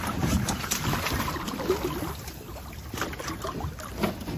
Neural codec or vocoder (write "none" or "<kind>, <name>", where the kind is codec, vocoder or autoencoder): none